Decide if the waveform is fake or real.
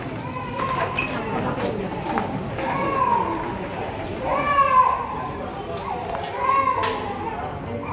real